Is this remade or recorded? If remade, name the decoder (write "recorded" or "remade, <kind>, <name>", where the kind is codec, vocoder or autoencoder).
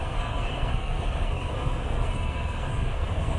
remade, codec, SNAC